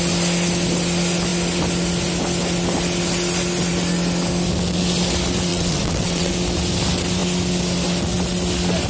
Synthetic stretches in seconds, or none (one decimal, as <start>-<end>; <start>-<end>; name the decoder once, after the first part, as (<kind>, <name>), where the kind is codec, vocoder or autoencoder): 5.5-6.3 (vocoder, WaveNeXt)